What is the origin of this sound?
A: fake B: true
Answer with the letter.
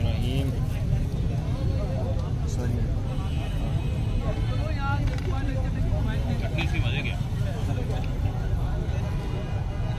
B